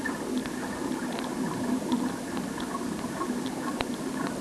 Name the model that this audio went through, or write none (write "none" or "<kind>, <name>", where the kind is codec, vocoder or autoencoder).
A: none